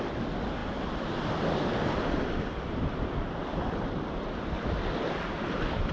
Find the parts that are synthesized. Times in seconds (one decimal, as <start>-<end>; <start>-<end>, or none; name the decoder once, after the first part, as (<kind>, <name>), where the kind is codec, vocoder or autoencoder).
none